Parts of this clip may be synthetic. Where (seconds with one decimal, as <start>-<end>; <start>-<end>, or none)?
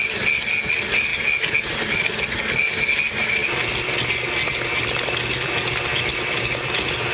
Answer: none